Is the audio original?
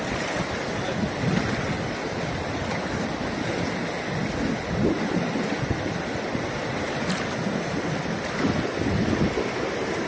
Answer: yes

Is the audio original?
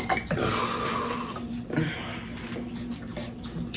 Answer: yes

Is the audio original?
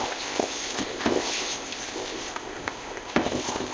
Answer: no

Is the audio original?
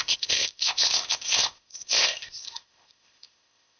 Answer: no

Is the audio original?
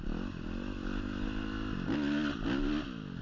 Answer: yes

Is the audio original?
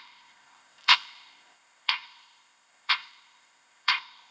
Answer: no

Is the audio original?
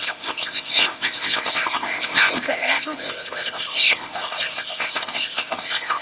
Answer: no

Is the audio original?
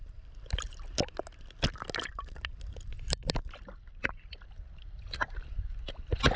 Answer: yes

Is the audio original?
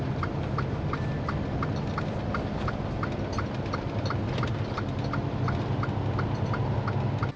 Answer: yes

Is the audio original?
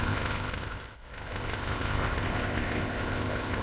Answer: no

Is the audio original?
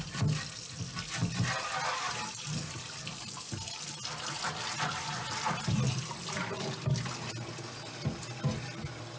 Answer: yes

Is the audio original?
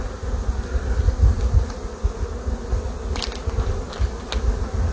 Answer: yes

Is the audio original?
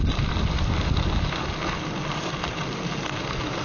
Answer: yes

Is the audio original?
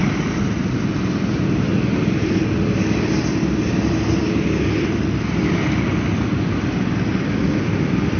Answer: yes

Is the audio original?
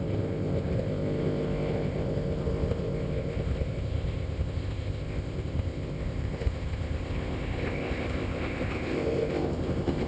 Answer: no